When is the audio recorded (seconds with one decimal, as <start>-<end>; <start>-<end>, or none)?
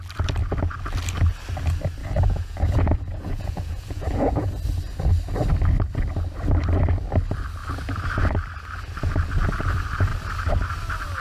0.0-2.0; 4.5-11.2